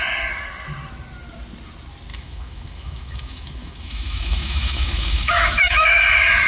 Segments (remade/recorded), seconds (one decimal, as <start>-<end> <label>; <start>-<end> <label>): 0.0-2.1 recorded; 2.1-6.0 remade; 6.0-6.5 recorded